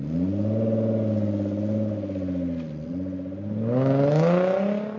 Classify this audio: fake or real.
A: real